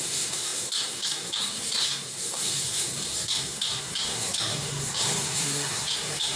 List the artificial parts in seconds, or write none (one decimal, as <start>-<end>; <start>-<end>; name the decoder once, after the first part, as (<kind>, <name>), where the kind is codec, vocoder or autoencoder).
0.0-6.4 (codec, SNAC)